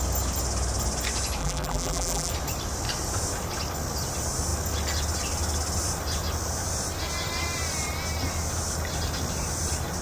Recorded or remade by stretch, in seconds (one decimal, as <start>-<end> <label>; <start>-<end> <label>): 0.0-1.4 recorded; 1.4-2.3 remade; 2.3-10.0 recorded